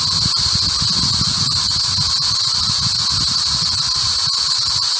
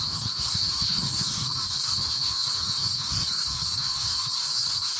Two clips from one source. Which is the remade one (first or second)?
second